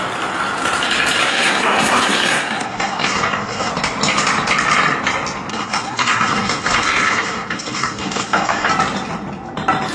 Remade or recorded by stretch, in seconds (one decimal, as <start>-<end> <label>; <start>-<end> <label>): 0.0-1.2 recorded; 1.2-3.7 remade; 3.7-5.5 recorded; 5.5-8.7 remade; 8.7-9.9 recorded